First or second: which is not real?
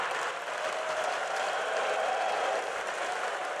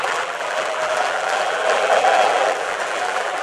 second